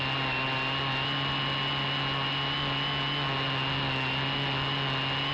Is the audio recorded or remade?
recorded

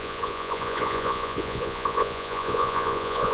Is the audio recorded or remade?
remade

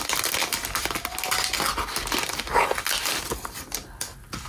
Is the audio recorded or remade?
recorded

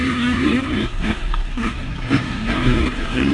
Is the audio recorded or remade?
remade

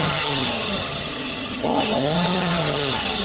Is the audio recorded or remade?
remade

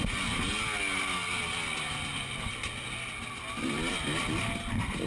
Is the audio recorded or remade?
recorded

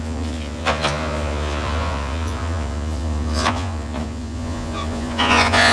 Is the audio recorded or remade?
remade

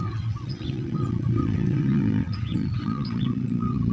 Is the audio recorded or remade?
remade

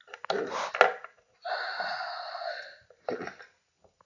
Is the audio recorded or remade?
recorded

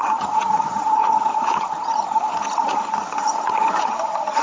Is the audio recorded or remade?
remade